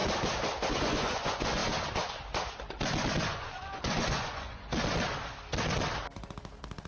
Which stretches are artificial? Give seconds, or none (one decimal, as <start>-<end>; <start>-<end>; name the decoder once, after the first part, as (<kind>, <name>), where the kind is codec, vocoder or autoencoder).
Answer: 0.7-1.6 (vocoder, Vocos); 3.3-4.7